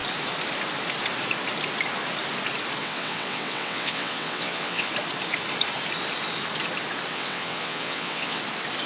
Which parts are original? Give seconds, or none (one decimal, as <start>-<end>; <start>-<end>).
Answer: 0.0-2.8; 4.9-7.1; 8.4-8.9

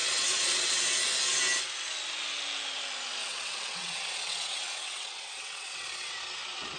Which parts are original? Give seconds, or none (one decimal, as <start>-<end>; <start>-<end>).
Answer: 0.8-3.2; 6.1-6.8